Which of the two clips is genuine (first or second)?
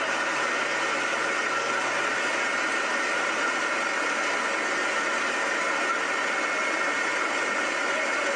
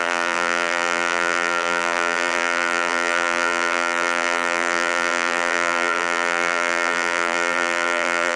first